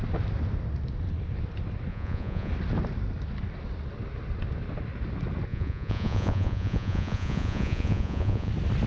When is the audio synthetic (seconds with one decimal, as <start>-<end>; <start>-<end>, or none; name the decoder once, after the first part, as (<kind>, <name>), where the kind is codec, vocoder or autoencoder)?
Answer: 1.9-2.5 (vocoder, Vocos); 5.5-8.5

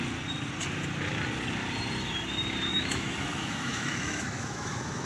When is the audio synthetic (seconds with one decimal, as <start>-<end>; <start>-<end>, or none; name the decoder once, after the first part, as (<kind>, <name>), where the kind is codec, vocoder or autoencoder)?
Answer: 2.7-5.1 (autoencoder, DAC-VAE)

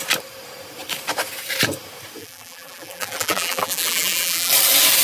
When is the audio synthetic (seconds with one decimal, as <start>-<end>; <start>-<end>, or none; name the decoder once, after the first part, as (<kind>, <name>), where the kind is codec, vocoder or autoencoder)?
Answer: 2.2-4.5 (vocoder, BigVGAN v2)

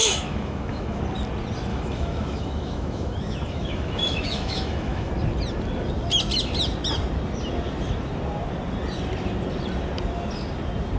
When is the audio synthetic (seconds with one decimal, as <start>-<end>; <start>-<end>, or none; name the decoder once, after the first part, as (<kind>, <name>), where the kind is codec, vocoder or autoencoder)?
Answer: 0.0-1.0 (autoencoder, DAC-VAE); 1.7-5.1

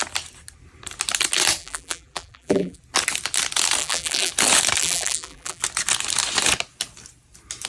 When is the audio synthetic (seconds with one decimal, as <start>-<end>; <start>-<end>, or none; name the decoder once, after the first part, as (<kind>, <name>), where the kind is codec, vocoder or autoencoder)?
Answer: 1.6-2.8 (vocoder, BigVGAN v2); 3.8-4.3; 4.8-5.6

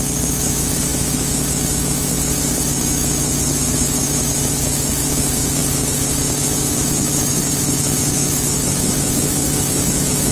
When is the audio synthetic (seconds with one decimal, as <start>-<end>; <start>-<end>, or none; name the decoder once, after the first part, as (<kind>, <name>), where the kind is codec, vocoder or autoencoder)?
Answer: 0.0-10.3 (autoencoder, DAC-VAE)

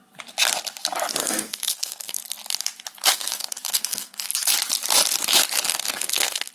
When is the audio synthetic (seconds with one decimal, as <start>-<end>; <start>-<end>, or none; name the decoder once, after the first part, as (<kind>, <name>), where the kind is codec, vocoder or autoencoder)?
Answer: 1.2-2.2 (codec, SNAC); 3.1-4.3; 5.7-6.5

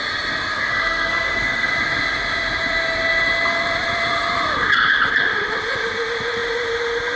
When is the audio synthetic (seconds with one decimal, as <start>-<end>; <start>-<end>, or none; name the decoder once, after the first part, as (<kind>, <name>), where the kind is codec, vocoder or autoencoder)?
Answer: 0.5-1.7 (codec, SNAC)